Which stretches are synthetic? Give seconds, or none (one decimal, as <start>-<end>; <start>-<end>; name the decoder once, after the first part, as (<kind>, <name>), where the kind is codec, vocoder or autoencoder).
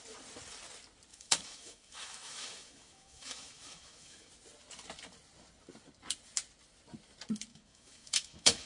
1.1-4.3 (autoencoder, DAC-VAE); 7.5-8.7